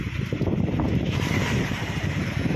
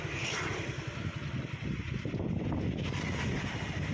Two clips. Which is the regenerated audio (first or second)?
first